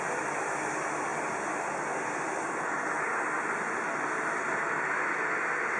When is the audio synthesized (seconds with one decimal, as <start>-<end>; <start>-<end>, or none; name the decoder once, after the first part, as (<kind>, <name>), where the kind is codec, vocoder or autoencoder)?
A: none